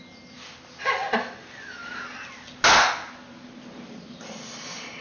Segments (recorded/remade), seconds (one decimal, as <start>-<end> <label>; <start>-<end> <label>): 0.0-5.0 recorded